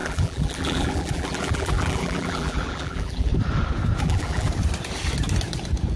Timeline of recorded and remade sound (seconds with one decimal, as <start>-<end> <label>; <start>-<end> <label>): 0.0-3.3 remade; 3.3-4.0 recorded; 4.0-4.5 remade; 4.5-6.0 recorded